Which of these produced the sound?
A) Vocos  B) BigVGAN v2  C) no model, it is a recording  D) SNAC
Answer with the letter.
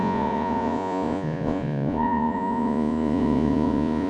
A